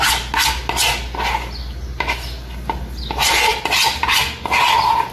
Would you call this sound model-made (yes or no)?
no